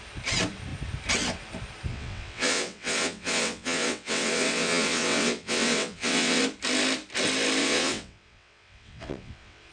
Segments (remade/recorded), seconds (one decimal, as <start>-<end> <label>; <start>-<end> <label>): 0.0-1.9 recorded; 1.9-6.4 remade; 6.4-7.6 recorded; 7.6-9.7 remade